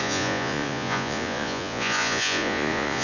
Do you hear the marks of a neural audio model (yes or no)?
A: yes